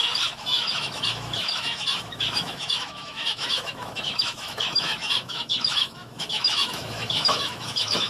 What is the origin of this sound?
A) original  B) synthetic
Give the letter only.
B